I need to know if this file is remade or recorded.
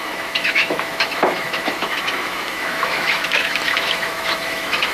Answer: remade